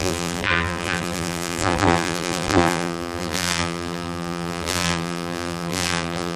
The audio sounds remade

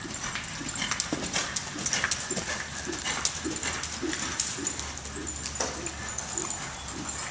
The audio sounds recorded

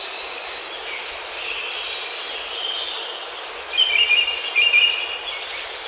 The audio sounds remade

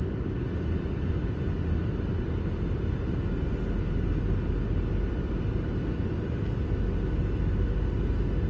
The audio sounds recorded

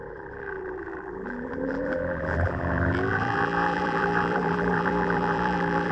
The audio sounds remade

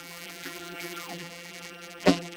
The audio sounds remade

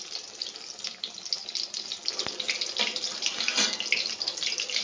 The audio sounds recorded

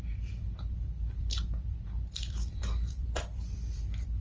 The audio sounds remade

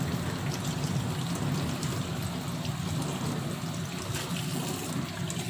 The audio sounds recorded